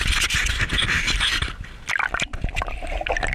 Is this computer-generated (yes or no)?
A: no